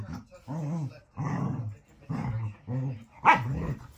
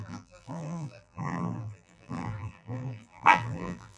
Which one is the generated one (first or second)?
second